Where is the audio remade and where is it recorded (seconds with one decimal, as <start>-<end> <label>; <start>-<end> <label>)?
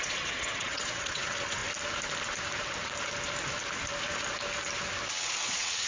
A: 0.0-1.6 remade; 1.6-5.1 recorded; 5.1-5.9 remade